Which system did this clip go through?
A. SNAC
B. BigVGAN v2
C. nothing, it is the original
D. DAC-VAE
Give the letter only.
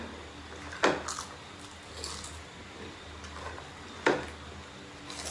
C